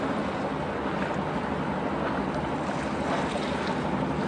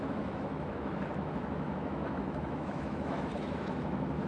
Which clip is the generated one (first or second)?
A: second